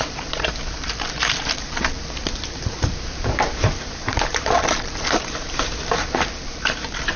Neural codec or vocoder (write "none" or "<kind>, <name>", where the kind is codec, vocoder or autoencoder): vocoder, BigVGAN v2